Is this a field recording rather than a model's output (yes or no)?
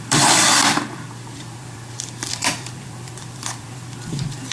no